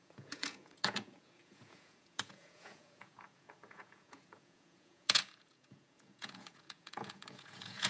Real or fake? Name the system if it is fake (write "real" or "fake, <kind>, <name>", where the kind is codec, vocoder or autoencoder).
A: fake, vocoder, Vocos